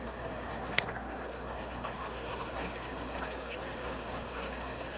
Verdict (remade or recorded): remade